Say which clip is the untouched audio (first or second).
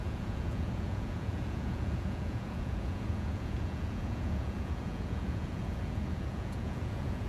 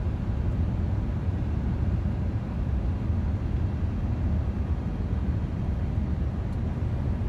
second